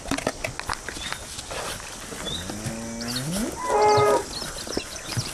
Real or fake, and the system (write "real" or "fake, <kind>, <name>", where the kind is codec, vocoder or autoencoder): real